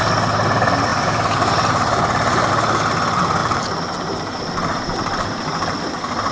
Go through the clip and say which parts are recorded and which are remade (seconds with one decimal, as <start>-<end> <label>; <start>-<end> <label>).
0.0-0.9 recorded; 0.9-2.5 remade; 2.5-3.4 recorded; 3.4-6.3 remade